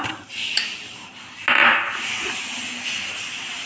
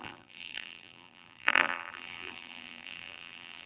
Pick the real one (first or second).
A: first